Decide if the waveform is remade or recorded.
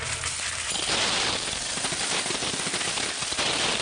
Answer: recorded